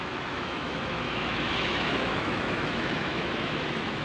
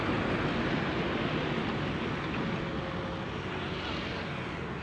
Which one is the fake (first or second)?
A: first